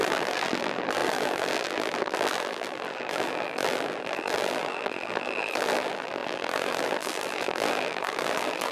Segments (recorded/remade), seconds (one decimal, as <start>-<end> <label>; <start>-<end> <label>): 0.0-8.7 remade